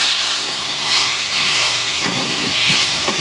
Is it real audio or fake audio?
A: fake